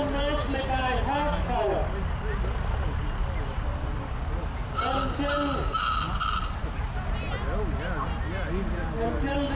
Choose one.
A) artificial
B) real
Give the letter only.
B